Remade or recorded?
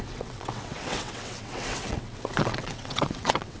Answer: remade